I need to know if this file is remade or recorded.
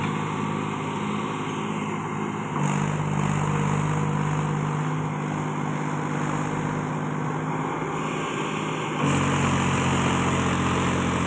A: recorded